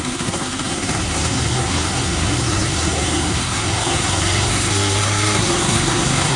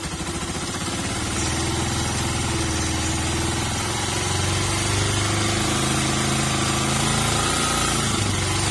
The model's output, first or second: first